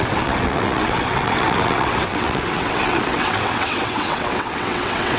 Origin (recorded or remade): remade